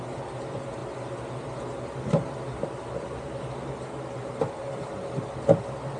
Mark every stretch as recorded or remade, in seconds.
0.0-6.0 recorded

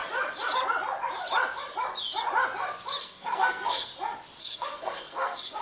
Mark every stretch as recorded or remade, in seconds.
0.0-3.0 recorded; 3.0-3.9 remade; 3.9-4.4 recorded; 4.4-5.6 remade